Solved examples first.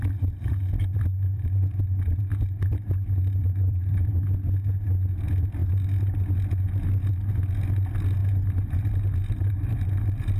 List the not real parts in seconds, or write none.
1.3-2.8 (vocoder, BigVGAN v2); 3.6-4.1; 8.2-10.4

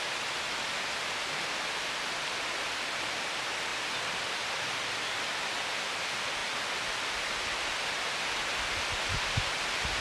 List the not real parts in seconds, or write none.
none

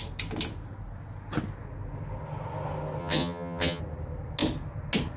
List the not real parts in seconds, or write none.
3.0-3.8 (vocoder, HiFi-GAN)